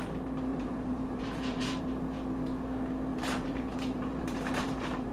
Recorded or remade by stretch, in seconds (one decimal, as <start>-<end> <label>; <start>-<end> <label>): 0.0-0.5 recorded; 0.5-1.8 remade; 1.8-3.1 recorded; 3.1-5.1 remade